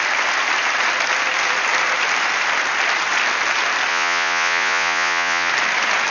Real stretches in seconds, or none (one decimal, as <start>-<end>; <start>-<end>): 0.0-3.9; 5.5-6.1